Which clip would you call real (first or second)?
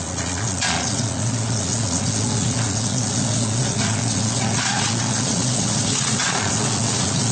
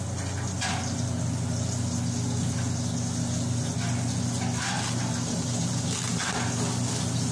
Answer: second